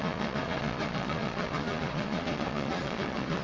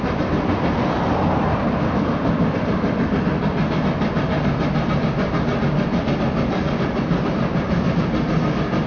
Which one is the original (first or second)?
second